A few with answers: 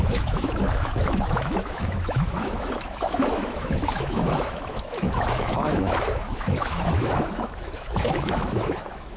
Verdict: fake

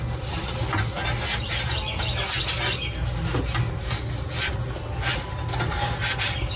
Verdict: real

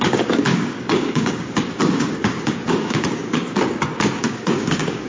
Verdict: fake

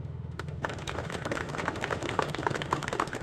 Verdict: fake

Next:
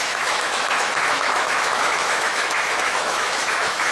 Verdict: fake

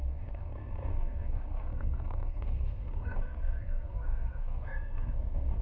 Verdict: fake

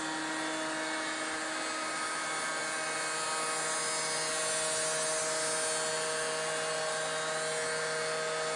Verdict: real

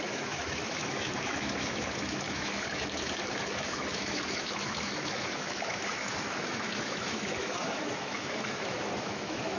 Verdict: fake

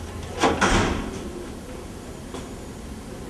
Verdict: real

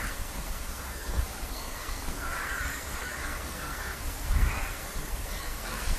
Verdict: fake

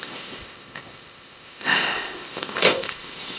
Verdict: fake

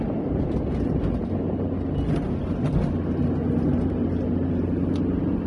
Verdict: real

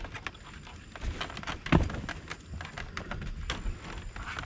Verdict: real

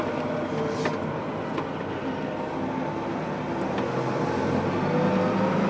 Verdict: real